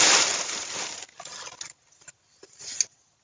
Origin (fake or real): real